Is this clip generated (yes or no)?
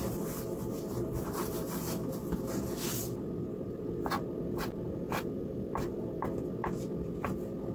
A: no